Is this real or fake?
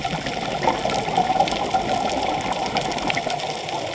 real